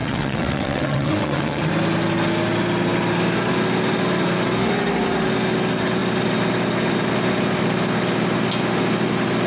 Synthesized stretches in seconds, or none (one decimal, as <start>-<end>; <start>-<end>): 0.0-1.7